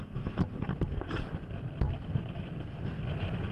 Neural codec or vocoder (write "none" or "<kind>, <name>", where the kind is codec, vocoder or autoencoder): none